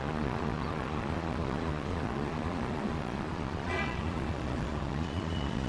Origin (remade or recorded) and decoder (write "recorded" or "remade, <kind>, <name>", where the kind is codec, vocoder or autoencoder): remade, vocoder, Vocos